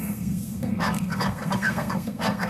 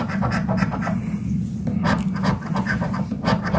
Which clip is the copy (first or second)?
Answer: first